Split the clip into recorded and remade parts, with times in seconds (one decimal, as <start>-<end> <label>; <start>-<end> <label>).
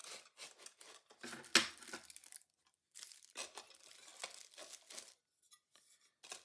0.0-6.4 recorded